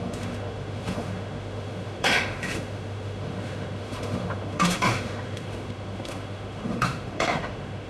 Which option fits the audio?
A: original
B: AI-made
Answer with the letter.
B